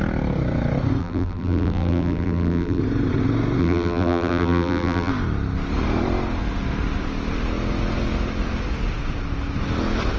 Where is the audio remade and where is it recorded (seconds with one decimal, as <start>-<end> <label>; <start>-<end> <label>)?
0.0-1.0 recorded; 1.0-2.8 remade; 2.8-3.6 recorded; 3.6-5.1 remade; 5.1-10.2 recorded